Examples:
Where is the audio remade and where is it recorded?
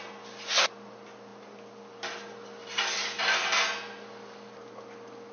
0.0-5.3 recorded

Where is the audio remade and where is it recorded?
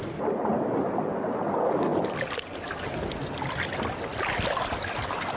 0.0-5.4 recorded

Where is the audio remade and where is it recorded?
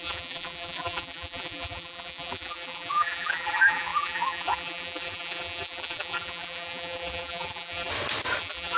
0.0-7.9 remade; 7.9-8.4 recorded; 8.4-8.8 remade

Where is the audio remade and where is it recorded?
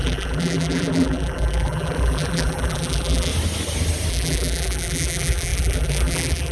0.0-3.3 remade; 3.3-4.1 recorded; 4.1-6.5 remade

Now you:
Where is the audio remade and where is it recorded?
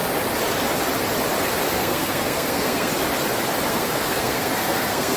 0.0-1.7 recorded; 1.7-2.9 remade; 2.9-3.7 recorded; 3.7-5.2 remade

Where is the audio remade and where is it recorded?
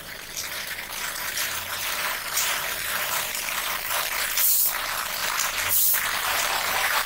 0.0-7.1 remade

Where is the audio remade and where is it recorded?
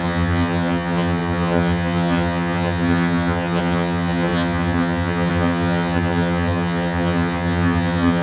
0.0-8.2 remade